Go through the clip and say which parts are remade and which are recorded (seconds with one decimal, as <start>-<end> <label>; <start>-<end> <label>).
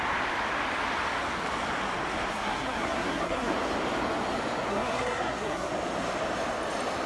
0.0-2.3 recorded; 2.3-3.5 remade; 3.5-4.7 recorded; 4.7-5.7 remade; 5.7-7.1 recorded